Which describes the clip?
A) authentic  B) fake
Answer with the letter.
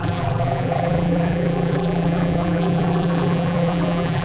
B